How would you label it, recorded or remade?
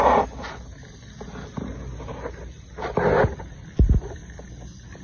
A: recorded